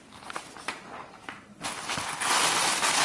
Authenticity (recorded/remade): recorded